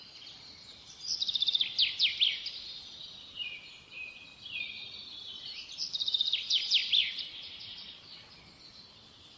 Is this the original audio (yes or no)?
yes